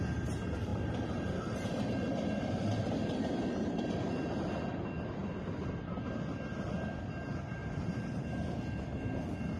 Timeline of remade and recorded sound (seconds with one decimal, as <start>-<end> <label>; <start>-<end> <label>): 0.0-0.7 recorded; 0.7-3.8 remade; 3.8-7.6 recorded; 7.6-8.4 remade; 8.4-9.6 recorded